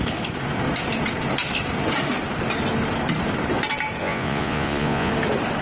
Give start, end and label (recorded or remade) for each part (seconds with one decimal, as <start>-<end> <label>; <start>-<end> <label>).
0.0-4.0 recorded; 4.0-5.1 remade; 5.1-5.6 recorded